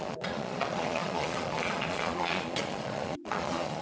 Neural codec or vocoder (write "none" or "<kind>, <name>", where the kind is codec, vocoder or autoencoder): vocoder, Vocos